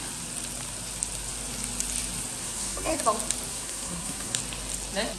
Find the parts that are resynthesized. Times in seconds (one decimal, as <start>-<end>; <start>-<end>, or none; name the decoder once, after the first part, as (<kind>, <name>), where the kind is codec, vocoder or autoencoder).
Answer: 2.4-3.0 (codec, SNAC); 3.5-4.4